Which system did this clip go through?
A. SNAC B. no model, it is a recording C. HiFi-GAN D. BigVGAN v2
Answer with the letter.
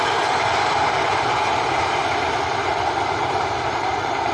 D